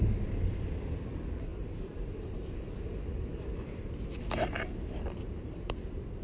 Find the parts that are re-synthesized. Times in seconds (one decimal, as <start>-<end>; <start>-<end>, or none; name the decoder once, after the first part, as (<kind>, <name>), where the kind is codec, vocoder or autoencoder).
none